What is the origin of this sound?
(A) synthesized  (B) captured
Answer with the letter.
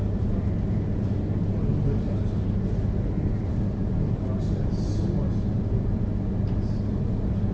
B